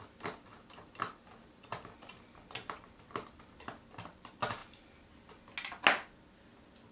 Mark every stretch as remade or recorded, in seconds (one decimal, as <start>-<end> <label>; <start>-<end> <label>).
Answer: 0.0-6.9 recorded